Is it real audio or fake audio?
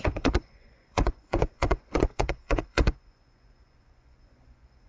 fake